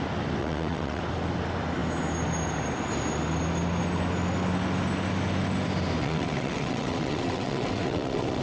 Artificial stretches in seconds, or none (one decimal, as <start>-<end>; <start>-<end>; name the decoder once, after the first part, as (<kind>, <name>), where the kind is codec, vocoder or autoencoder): 0.4-1.0 (vocoder, WaveNeXt); 6.0-8.4